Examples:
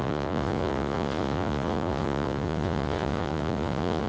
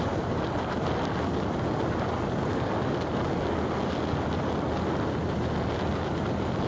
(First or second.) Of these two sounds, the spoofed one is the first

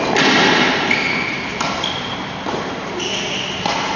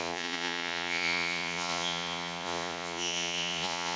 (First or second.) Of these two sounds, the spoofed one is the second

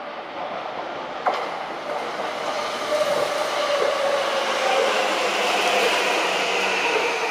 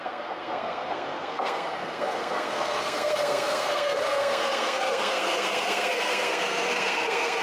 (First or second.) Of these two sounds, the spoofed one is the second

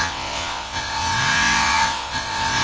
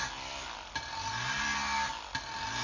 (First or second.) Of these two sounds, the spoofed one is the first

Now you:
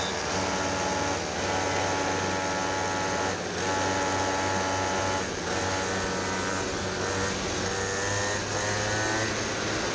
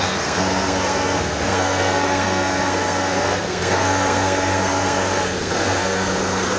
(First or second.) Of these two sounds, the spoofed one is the second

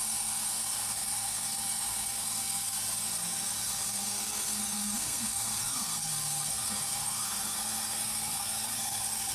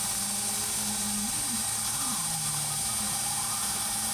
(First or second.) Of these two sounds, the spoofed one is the first